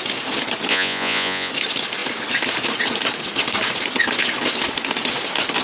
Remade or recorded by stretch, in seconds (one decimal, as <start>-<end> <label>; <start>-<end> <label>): 0.0-0.7 recorded; 0.7-1.5 remade; 1.5-5.6 recorded